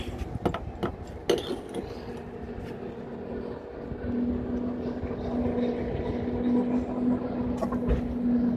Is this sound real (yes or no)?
yes